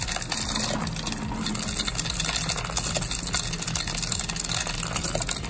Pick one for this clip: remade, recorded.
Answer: recorded